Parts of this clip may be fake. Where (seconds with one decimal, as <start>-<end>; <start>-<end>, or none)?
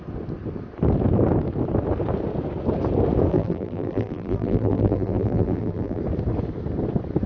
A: 3.3-6.0